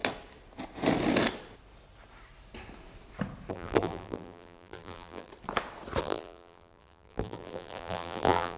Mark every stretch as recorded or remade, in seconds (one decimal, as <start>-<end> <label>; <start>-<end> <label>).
0.0-3.5 recorded; 3.5-5.3 remade; 5.3-6.0 recorded; 6.0-8.6 remade

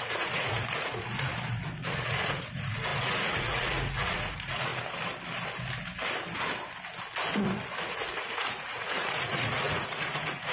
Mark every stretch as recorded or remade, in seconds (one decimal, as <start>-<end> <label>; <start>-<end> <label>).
0.0-1.3 remade; 1.3-1.9 recorded; 1.9-4.7 remade; 4.7-7.8 recorded; 7.8-10.5 remade

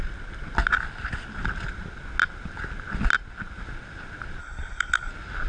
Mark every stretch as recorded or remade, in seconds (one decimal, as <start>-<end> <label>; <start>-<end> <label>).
0.0-4.4 recorded; 4.4-5.1 remade; 5.1-5.5 recorded